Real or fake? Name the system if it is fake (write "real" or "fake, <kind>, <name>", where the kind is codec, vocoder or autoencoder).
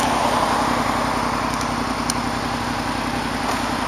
real